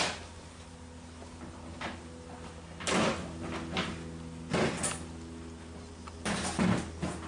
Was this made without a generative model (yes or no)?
yes